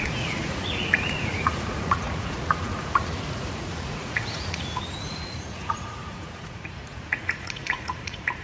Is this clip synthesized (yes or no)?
yes